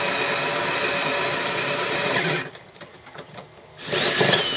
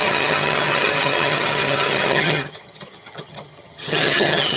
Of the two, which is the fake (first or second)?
second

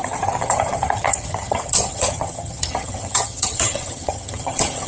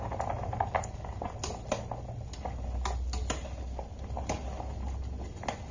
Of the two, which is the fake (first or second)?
first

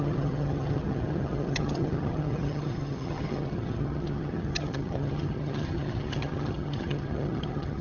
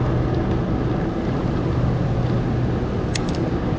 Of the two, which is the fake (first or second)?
first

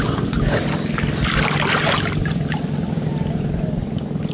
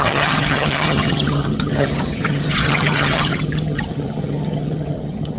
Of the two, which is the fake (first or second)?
second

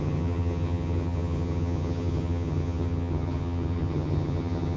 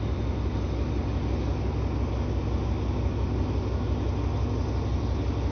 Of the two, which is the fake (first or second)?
first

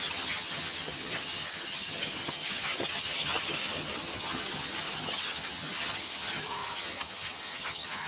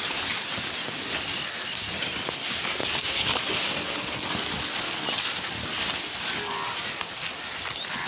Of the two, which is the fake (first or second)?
first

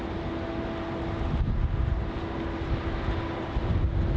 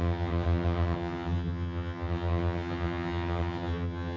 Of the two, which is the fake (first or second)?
second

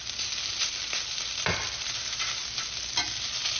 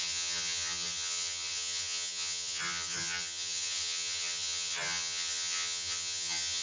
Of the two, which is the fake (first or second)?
second